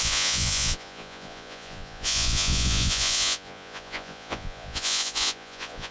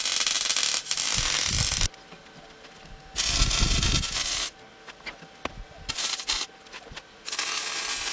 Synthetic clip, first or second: first